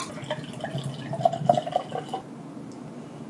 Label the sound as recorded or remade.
recorded